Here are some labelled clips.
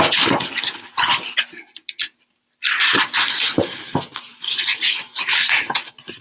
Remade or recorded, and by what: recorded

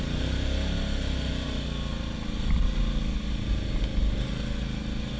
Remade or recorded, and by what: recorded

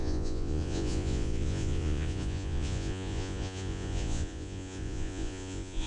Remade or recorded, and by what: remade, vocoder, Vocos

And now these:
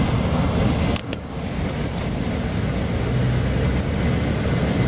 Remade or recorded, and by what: recorded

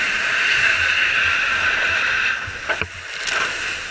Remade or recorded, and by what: recorded